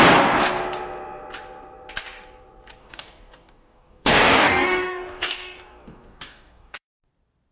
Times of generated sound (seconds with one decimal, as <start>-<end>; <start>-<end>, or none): 2.8-7.0